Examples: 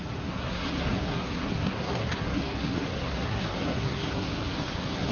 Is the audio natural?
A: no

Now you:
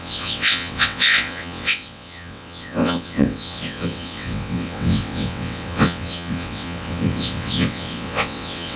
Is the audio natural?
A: no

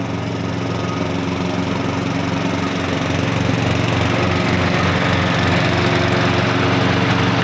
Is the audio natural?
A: yes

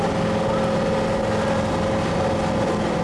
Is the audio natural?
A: yes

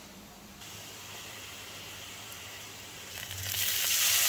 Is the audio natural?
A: no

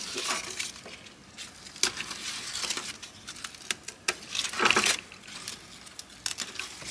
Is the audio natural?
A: yes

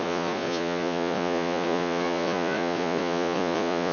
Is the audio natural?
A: no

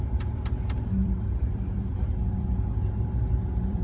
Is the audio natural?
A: no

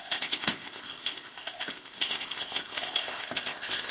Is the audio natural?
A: no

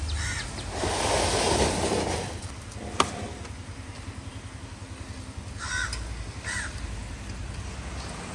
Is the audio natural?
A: yes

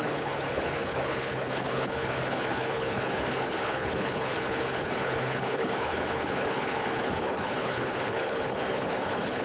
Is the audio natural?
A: no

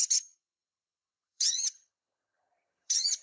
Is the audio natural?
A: no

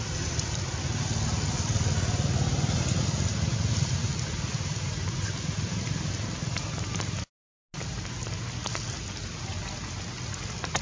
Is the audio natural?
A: yes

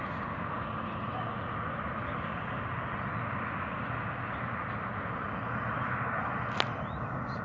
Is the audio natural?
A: yes